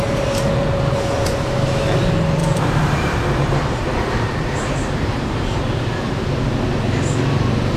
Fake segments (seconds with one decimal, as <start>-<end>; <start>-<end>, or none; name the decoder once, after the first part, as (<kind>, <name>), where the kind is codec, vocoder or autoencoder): 2.4-5.6 (vocoder, BigVGAN v2)